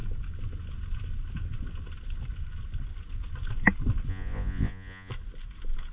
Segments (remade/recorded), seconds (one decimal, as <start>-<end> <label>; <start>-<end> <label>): 0.0-4.1 recorded; 4.1-5.1 remade; 5.1-5.9 recorded